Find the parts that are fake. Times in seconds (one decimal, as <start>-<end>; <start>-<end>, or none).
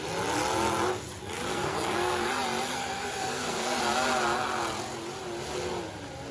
1.5-2.3; 2.7-3.8